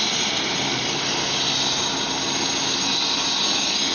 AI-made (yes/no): no